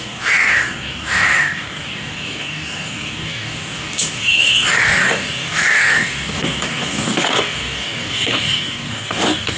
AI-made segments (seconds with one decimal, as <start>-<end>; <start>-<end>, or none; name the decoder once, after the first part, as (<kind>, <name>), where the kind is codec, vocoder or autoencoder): 0.0-9.6 (codec, DAC)